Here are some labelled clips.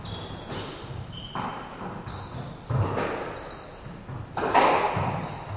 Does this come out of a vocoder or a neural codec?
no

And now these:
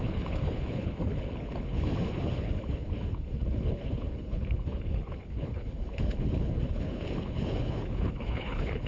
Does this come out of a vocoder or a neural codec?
yes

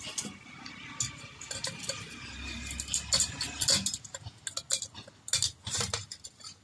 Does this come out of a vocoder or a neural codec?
no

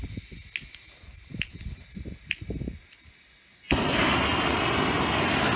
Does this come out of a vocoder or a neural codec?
no